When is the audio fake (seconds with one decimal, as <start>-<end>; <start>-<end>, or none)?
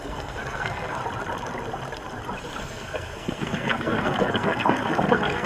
0.0-1.0; 2.6-5.5